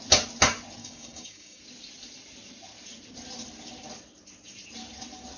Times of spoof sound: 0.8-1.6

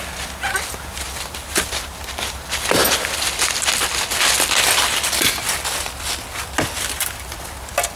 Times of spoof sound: none

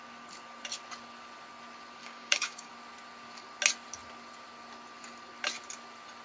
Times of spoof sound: 2.0-2.7

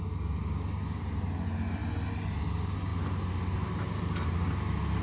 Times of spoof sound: 0.4-1.0

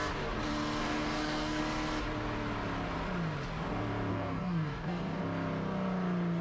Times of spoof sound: 0.8-1.6; 4.1-5.2

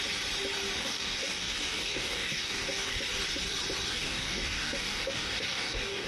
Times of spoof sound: 0.8-3.0; 3.9-6.1

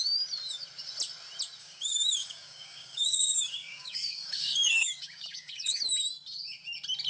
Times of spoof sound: 1.6-5.8